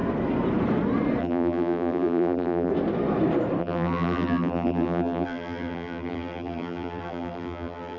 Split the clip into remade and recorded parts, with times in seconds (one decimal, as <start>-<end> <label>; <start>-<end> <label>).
0.0-1.2 recorded; 1.2-2.7 remade; 2.7-3.6 recorded; 3.6-8.0 remade